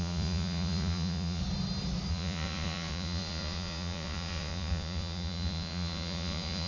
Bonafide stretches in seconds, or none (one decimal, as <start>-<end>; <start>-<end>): 1.4-2.1

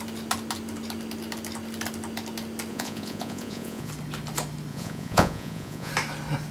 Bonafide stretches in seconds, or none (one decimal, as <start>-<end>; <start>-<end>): 0.0-2.7; 3.9-4.7; 5.9-6.5

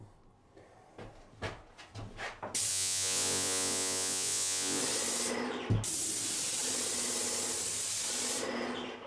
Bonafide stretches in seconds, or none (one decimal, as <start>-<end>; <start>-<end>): 0.0-2.7; 4.8-9.1

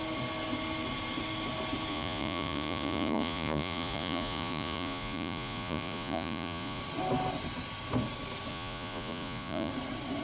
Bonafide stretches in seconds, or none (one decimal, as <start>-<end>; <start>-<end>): 0.0-1.9; 6.8-8.5; 9.7-10.2

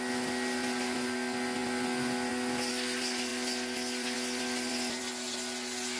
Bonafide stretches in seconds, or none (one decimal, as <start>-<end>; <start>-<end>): 0.0-6.0

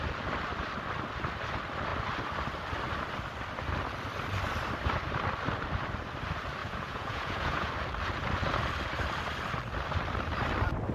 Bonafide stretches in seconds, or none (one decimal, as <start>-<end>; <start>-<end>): 0.0-6.6; 7.7-10.9

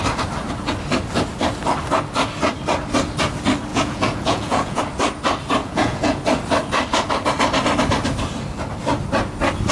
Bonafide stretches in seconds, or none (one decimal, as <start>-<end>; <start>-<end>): 0.0-3.7; 4.8-5.6; 6.2-9.7